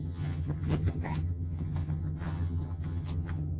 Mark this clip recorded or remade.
remade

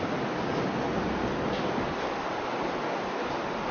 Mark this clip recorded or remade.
recorded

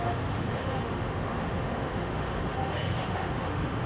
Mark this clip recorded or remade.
remade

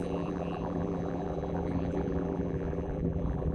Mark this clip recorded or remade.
remade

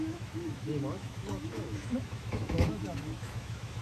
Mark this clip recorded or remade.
remade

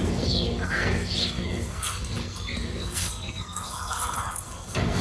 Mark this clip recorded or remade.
remade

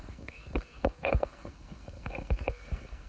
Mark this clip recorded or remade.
remade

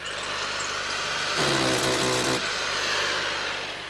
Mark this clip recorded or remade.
recorded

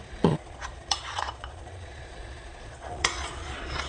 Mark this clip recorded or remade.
remade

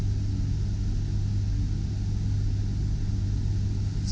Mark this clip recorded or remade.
recorded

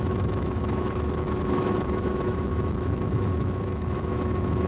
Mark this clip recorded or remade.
remade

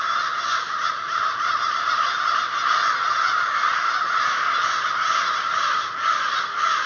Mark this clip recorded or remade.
recorded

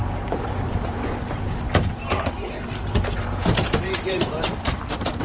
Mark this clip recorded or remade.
remade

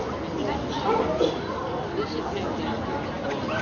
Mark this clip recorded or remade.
recorded